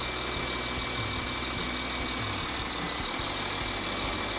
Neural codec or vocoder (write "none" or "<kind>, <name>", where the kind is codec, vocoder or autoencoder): none